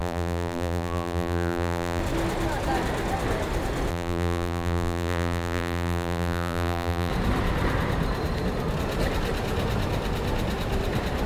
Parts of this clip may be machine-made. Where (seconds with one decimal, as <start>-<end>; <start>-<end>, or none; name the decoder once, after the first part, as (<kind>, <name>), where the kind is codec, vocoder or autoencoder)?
0.0-2.0 (vocoder, BigVGAN v2); 3.9-7.1